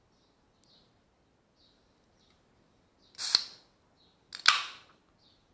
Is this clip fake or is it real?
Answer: real